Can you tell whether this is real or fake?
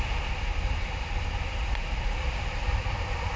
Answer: real